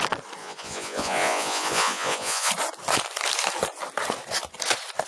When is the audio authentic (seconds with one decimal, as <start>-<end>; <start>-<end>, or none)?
0.0-0.4; 2.5-5.1